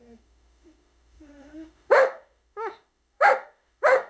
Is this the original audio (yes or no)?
no